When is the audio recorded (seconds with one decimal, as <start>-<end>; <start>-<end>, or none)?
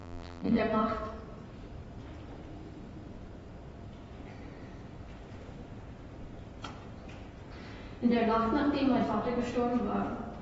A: 0.6-10.4